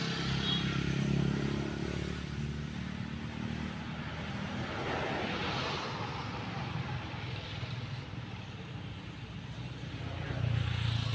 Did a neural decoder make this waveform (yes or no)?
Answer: no